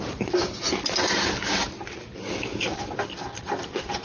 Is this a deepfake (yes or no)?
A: no